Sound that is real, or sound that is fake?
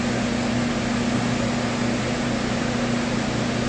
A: real